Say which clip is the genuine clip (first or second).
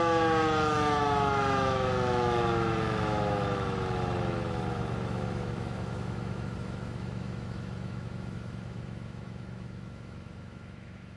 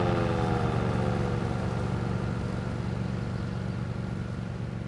second